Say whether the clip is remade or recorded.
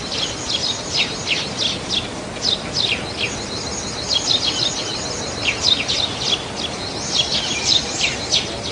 recorded